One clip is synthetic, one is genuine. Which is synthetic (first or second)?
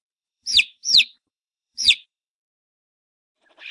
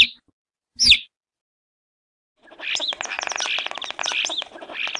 first